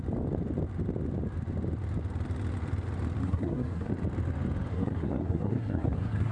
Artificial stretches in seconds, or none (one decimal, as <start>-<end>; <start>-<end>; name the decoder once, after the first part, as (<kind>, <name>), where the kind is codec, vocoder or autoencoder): 3.2-3.9 (codec, SNAC); 4.7-6.3